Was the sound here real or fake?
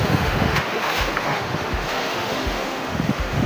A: fake